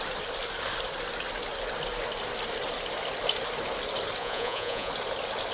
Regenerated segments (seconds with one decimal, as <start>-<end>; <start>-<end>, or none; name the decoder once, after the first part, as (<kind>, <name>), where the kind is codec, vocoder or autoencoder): 4.2-4.9 (vocoder, Vocos)